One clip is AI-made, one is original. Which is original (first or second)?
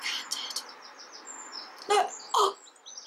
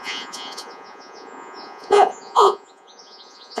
first